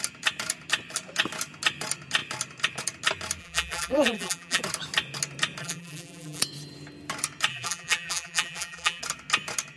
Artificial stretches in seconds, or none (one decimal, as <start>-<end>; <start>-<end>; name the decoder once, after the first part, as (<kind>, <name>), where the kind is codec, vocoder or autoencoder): 3.4-4.6 (vocoder, BigVGAN v2); 5.6-6.4; 7.5-9.0